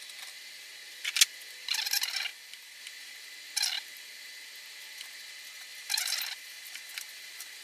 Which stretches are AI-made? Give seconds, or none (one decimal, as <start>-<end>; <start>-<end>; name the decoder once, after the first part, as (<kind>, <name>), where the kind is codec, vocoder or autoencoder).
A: 2.3-2.8 (vocoder, BigVGAN v2); 5.7-6.9